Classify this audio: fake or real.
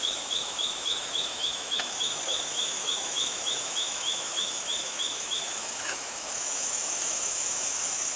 fake